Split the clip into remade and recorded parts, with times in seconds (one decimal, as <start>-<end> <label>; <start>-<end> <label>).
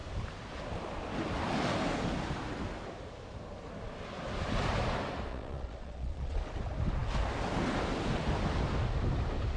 0.0-5.3 recorded; 5.3-6.4 remade; 6.4-9.6 recorded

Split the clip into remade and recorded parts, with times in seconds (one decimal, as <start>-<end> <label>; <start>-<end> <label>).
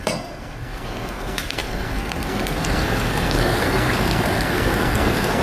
0.0-5.4 remade